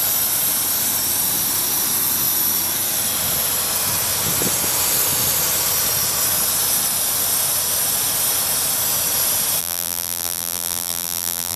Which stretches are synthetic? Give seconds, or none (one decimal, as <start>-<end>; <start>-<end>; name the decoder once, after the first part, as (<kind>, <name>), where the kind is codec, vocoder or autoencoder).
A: 9.6-11.6 (vocoder, BigVGAN v2)